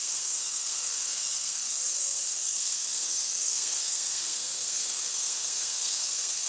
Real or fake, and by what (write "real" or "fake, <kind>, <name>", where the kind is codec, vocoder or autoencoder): fake, codec, SNAC